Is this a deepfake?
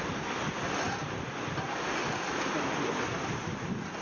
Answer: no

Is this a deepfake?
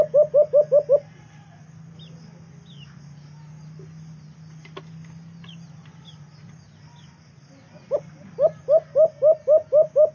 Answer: no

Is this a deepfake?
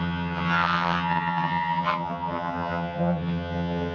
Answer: yes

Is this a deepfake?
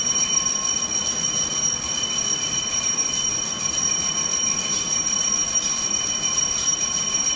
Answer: no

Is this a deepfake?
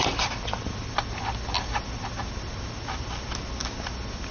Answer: no